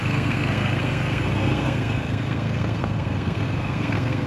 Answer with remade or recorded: remade